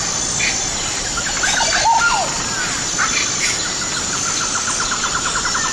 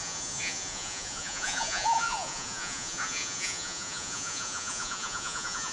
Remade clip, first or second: second